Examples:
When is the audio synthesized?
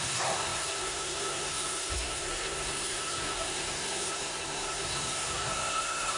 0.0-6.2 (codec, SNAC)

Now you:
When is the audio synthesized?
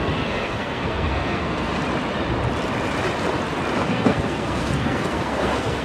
0.0-1.7 (codec, SNAC); 3.8-5.8